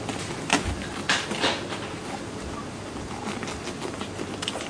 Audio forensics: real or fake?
real